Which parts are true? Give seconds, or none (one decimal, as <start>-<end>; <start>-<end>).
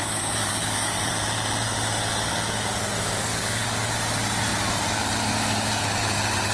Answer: 1.1-3.3; 3.9-6.5